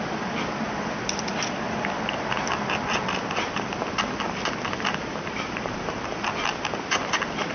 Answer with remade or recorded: recorded